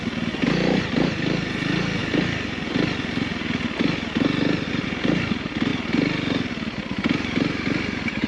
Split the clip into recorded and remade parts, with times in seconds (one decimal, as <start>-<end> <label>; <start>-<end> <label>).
0.0-8.3 recorded